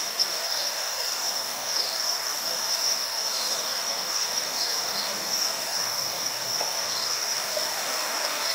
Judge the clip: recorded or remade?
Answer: remade